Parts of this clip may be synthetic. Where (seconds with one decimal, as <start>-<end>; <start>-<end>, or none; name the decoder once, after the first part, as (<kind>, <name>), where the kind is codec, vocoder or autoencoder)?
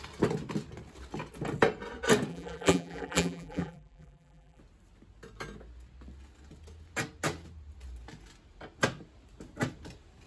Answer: 2.3-4.6 (vocoder, BigVGAN v2)